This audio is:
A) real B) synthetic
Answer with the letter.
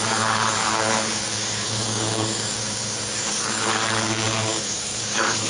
B